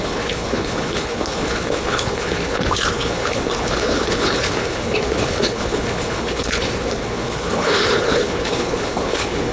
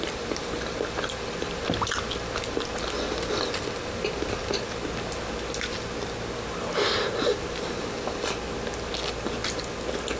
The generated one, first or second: first